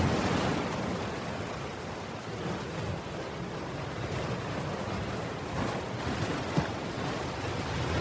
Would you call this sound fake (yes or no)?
no